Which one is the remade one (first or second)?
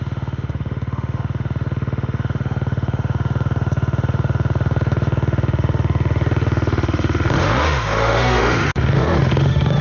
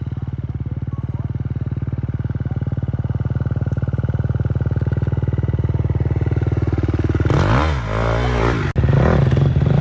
first